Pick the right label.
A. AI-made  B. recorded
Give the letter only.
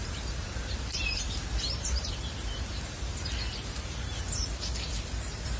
A